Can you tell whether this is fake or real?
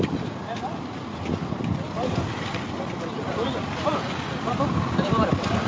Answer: real